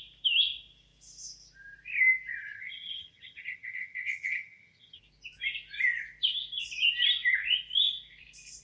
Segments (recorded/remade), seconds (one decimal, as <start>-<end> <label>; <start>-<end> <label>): 0.0-2.4 recorded; 2.4-5.0 remade; 5.0-8.6 recorded